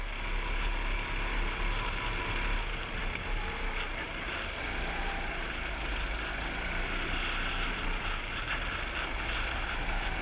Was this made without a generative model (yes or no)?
yes